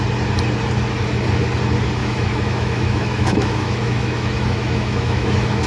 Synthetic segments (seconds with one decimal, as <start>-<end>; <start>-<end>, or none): 2.0-5.7